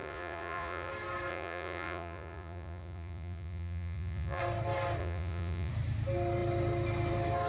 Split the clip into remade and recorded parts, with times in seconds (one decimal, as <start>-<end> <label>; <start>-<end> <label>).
0.0-0.9 remade; 0.9-1.3 recorded; 1.3-4.4 remade; 4.4-5.0 recorded; 5.0-5.7 remade; 5.7-7.5 recorded